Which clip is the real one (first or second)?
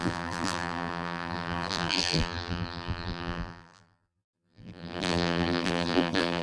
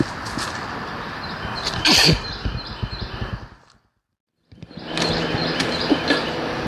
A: second